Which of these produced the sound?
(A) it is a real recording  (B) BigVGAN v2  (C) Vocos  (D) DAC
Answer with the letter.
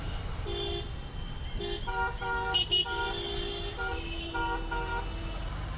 A